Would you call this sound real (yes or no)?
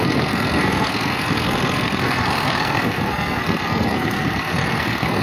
no